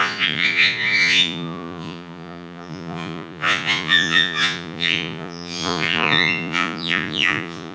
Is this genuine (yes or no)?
no